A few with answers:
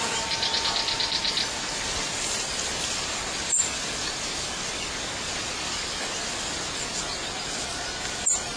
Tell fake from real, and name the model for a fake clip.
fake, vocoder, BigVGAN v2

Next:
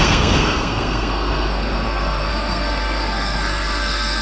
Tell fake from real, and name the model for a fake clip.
fake, codec, SNAC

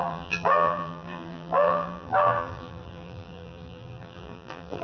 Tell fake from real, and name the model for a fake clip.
fake, vocoder, BigVGAN v2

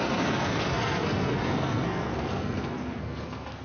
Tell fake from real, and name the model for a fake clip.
fake, codec, SNAC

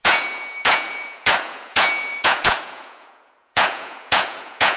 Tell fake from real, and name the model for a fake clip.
fake, vocoder, Vocos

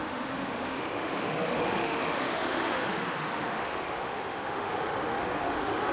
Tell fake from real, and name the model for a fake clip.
fake, autoencoder, DAC-VAE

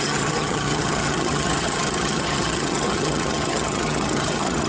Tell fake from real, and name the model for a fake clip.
fake, vocoder, HiFi-GAN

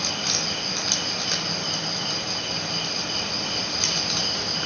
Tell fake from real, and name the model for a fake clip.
real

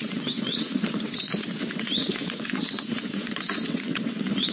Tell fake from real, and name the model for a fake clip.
fake, vocoder, WaveNeXt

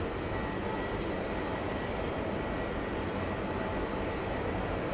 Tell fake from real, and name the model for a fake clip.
real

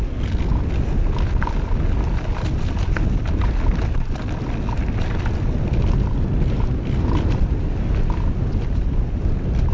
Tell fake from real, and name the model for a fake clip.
real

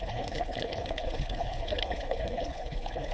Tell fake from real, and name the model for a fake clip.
fake, codec, HILCodec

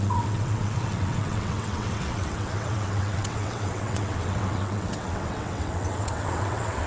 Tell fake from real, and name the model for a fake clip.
fake, vocoder, WaveNeXt